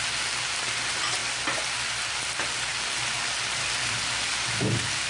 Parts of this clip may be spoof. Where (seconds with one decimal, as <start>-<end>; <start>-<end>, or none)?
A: none